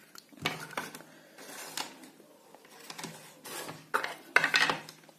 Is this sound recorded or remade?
recorded